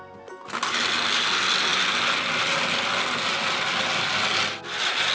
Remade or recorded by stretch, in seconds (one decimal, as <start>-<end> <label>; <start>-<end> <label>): 0.0-5.1 recorded